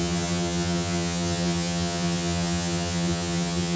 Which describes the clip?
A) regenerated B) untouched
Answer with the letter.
A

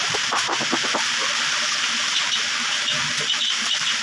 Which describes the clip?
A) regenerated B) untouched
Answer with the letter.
A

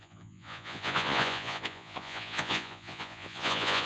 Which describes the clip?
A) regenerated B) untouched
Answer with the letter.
A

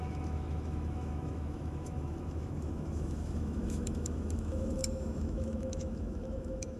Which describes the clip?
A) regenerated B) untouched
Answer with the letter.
A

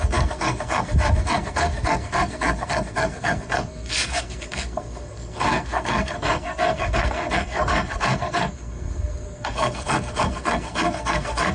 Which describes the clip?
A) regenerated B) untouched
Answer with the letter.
A